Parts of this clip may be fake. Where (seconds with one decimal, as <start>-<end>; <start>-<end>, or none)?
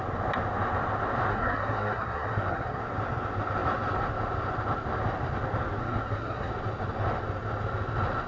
1.3-2.8; 5.8-6.5